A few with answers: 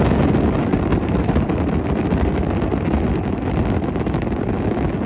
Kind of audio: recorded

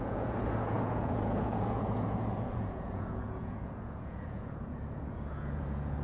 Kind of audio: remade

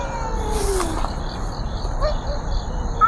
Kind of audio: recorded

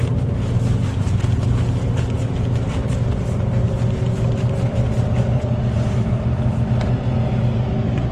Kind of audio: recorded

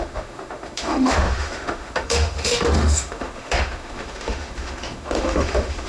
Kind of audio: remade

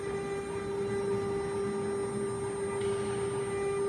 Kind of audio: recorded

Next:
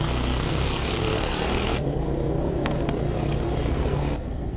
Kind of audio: remade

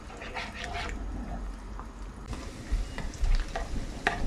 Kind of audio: recorded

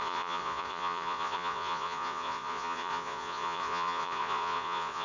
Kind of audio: remade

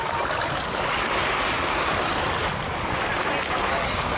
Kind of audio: recorded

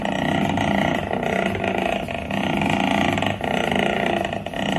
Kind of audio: recorded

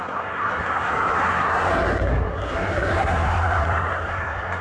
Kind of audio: remade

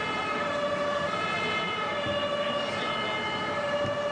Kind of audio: recorded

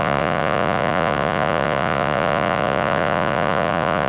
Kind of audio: remade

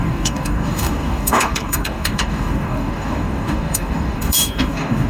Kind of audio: remade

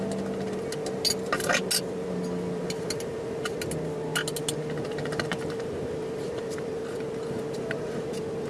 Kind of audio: recorded